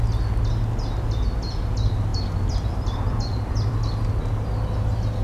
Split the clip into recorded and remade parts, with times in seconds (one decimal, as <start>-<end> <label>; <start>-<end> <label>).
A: 0.0-2.1 recorded; 2.1-3.8 remade; 3.8-5.2 recorded